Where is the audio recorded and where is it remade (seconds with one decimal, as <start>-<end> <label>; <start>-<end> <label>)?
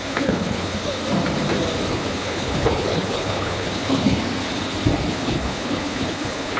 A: 0.0-1.0 remade; 1.0-1.9 recorded; 1.9-4.2 remade; 4.2-5.1 recorded; 5.1-6.6 remade